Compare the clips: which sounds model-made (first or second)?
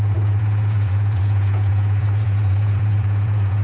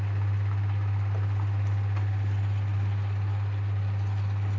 first